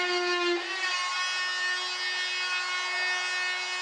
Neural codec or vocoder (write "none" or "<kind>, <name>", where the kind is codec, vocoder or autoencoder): none